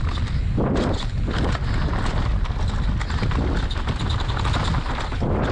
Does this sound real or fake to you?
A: real